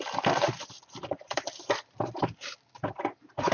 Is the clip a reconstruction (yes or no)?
yes